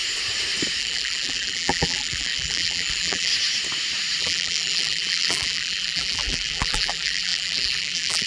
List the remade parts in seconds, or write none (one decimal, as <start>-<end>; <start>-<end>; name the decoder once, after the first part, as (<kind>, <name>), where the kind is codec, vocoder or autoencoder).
0.8-3.3 (vocoder, BigVGAN v2); 4.2-8.3